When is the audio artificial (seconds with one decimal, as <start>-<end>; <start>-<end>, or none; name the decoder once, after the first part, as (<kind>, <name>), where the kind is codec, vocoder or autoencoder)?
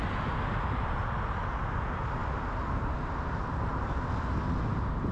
none